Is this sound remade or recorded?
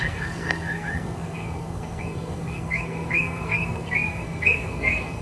remade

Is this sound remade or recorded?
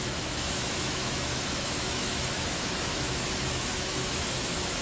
remade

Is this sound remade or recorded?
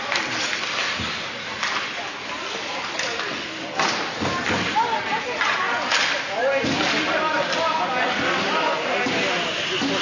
recorded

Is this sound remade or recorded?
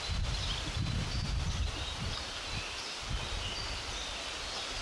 recorded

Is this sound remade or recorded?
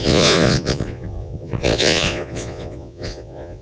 remade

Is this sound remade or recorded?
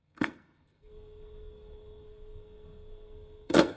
remade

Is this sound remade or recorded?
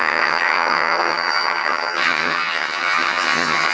remade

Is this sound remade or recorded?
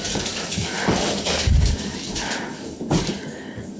remade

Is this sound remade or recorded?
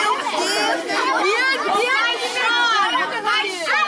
recorded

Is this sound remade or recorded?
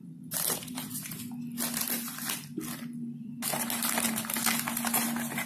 recorded